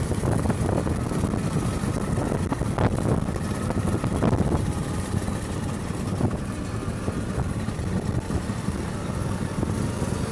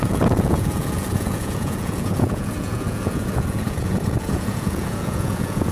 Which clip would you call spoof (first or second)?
second